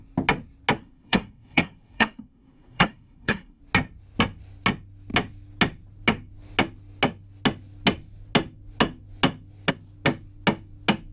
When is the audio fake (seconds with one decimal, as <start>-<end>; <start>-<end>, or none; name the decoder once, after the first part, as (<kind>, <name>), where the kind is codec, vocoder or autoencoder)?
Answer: 0.8-3.6 (codec, SNAC)